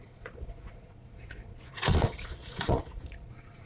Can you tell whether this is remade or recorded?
remade